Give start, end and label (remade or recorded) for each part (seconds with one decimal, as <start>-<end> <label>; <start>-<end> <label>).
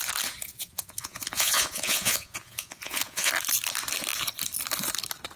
0.0-0.5 recorded; 0.5-3.3 remade; 3.3-5.4 recorded